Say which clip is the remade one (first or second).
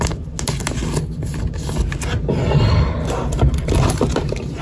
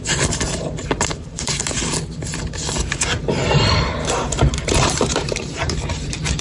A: second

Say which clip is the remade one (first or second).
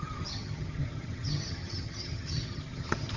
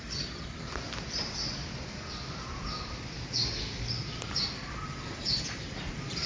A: first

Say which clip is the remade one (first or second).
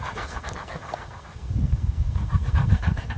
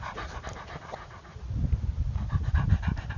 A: first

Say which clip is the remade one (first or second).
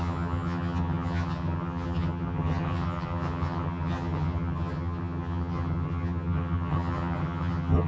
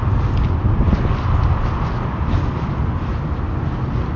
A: first